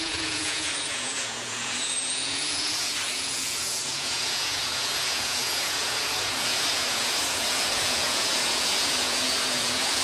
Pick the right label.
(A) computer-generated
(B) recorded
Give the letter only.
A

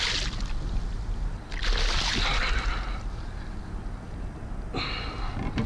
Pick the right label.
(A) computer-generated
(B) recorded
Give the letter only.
B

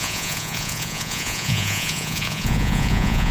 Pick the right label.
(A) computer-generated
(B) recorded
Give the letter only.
A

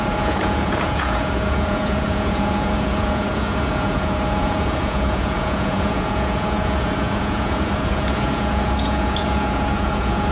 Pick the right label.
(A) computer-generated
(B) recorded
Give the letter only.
A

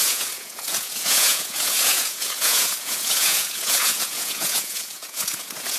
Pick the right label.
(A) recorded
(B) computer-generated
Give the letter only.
B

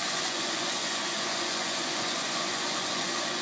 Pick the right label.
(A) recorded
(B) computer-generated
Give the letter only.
B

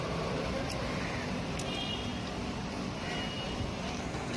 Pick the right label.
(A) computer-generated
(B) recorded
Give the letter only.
B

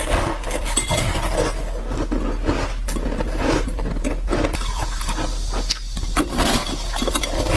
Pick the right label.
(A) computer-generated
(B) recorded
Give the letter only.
B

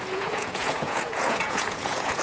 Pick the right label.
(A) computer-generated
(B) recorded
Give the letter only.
A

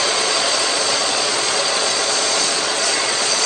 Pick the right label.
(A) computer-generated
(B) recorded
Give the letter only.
A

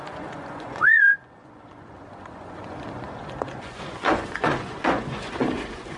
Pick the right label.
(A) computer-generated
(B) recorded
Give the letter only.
A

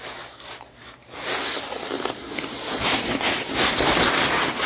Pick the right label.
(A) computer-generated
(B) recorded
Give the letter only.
B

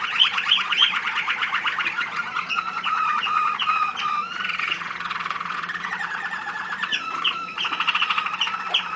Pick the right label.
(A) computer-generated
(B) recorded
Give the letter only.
A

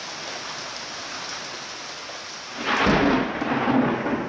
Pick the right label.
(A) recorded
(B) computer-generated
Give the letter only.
A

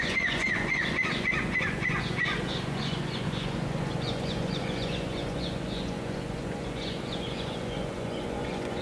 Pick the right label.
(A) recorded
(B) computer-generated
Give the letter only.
B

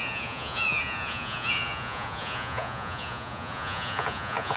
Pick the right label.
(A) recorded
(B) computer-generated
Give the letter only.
B